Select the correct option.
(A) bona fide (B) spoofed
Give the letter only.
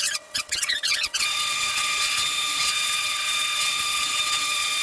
B